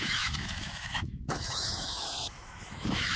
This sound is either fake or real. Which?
fake